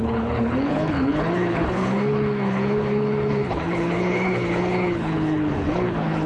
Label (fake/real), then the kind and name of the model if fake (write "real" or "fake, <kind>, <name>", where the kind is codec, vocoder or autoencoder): fake, codec, HILCodec